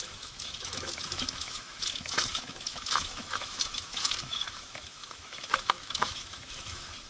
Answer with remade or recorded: remade